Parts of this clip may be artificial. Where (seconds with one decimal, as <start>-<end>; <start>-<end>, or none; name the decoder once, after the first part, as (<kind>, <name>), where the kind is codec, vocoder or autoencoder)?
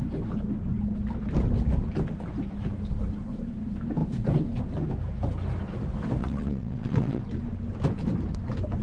6.2-7.2 (vocoder, WaveNeXt)